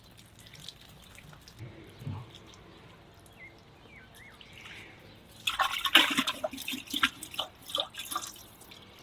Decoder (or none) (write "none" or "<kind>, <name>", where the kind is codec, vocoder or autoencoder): none